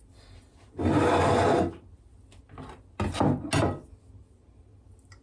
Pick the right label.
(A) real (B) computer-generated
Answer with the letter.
A